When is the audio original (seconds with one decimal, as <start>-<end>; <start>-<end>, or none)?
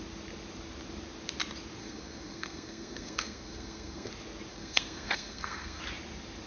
0.0-1.8; 4.1-4.5; 5.8-6.5